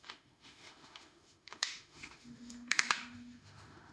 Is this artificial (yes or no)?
yes